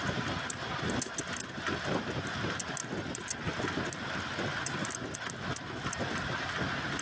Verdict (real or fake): real